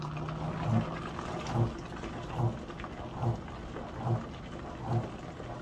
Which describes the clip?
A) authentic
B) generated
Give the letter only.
A